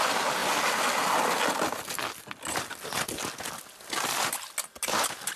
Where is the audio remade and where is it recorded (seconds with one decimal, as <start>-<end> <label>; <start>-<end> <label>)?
0.0-5.4 recorded